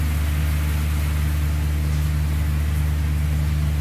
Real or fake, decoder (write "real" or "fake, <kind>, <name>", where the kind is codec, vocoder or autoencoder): real